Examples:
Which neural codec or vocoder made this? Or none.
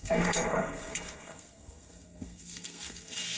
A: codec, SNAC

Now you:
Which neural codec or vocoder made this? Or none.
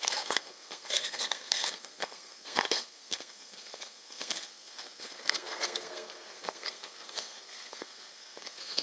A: codec, SNAC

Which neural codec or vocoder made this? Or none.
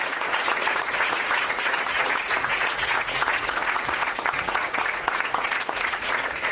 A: vocoder, Vocos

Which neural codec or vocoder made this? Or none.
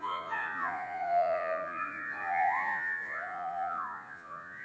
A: vocoder, Vocos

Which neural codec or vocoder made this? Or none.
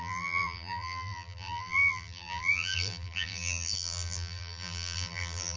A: vocoder, BigVGAN v2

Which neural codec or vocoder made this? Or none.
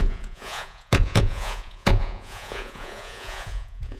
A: vocoder, Vocos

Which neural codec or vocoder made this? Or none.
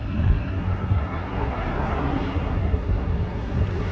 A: codec, SNAC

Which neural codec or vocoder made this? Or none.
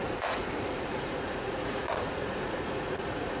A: vocoder, Vocos